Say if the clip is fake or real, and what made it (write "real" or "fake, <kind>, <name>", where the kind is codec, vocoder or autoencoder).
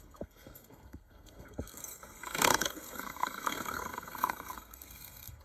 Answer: fake, codec, SNAC